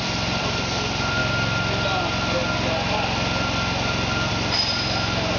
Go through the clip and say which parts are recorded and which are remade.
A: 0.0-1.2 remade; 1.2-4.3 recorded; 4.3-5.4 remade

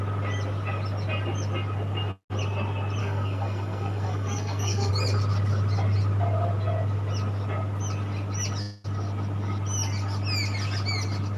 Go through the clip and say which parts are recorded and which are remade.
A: 0.0-3.0 recorded; 3.0-4.9 remade; 4.9-11.4 recorded

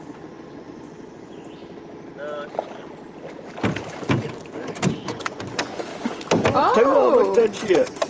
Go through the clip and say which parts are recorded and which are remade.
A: 0.0-1.6 remade; 1.6-4.9 recorded; 4.9-5.9 remade; 5.9-6.5 recorded; 6.5-8.1 remade